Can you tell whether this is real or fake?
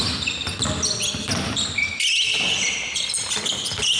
real